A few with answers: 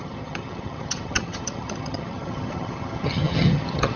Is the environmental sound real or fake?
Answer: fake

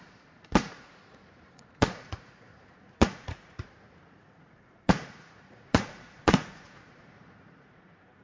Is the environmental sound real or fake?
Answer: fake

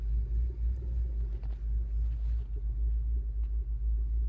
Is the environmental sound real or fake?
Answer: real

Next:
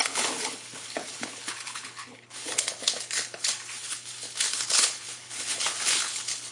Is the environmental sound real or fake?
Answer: fake